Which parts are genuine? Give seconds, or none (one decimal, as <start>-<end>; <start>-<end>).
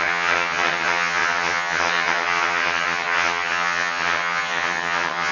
none